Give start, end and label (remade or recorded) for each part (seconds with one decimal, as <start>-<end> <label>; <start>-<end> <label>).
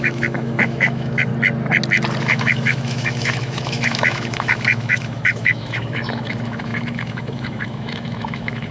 0.0-1.3 remade; 1.3-2.2 recorded; 2.2-8.7 remade